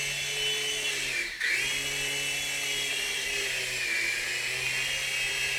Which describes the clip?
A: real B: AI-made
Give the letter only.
A